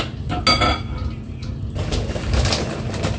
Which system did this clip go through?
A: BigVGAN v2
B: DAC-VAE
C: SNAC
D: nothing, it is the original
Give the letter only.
D